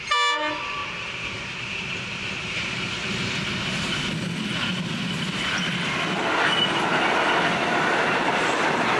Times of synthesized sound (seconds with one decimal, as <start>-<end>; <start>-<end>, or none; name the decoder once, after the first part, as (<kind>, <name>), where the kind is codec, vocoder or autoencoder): 0.8-3.1 (vocoder, BigVGAN v2)